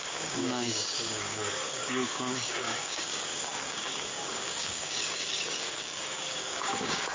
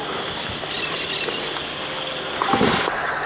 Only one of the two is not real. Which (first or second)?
first